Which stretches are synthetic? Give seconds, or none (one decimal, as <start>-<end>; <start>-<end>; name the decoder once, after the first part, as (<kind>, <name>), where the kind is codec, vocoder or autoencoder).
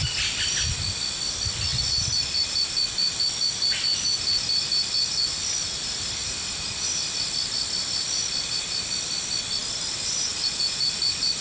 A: none